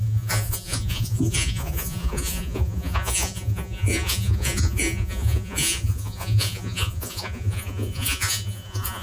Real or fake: fake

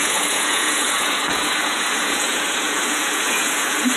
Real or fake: fake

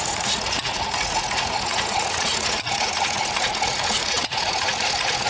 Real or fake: fake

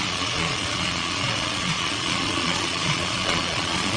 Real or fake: fake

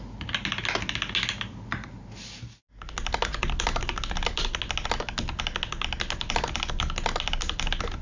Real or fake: real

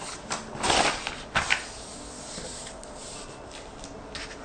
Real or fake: real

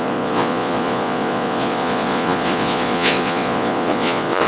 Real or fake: fake